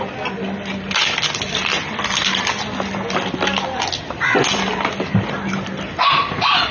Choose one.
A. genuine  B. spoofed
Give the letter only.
A